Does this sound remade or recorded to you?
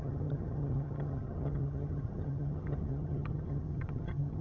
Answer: remade